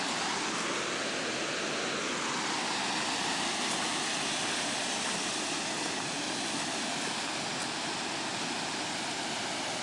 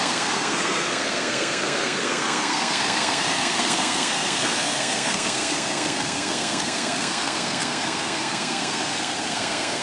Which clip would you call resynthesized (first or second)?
second